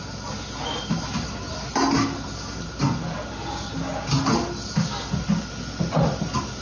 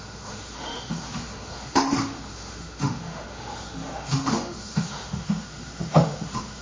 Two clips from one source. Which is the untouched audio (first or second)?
first